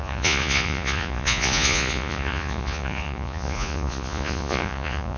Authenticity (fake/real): fake